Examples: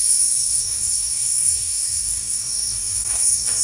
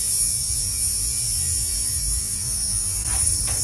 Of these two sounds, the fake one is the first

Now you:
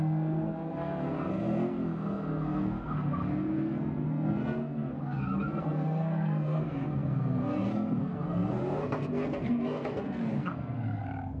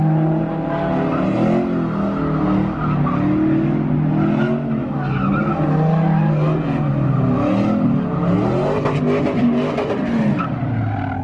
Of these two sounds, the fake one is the first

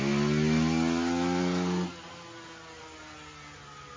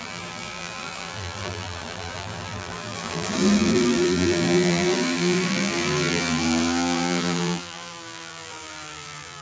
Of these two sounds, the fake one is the second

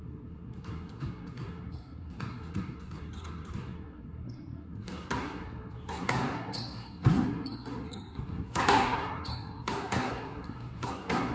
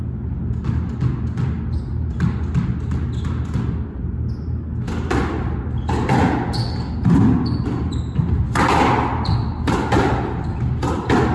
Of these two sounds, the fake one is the first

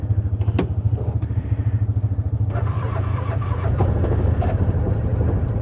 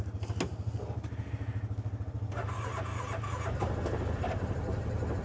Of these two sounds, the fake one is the first